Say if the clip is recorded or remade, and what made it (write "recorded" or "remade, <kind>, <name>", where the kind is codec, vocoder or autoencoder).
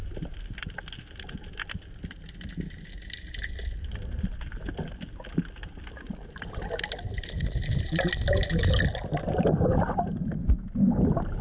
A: recorded